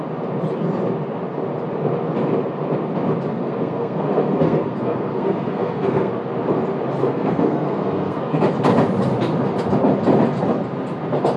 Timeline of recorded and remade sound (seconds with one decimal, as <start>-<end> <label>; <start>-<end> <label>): 0.0-3.3 recorded; 3.3-6.1 remade; 6.1-7.0 recorded; 7.0-8.4 remade; 8.4-11.4 recorded